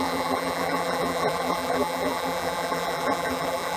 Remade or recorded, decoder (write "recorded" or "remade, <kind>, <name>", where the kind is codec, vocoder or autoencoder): remade, vocoder, BigVGAN v2